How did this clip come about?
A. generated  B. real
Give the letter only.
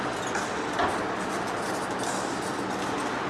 B